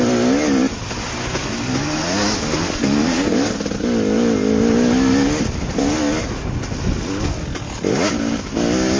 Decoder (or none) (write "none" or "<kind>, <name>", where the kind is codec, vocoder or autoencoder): none